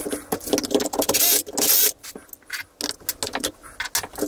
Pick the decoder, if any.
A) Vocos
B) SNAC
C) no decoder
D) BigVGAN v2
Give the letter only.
C